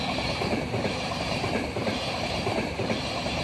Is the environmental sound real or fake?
fake